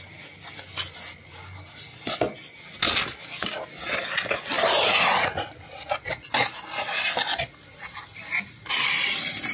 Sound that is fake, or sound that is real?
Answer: real